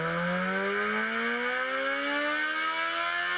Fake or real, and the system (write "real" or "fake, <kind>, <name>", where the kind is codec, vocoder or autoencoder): real